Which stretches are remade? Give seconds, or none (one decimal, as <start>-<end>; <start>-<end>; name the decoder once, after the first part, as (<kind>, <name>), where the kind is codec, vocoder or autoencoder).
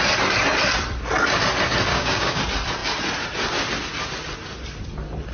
1.9-2.4 (codec, DAC)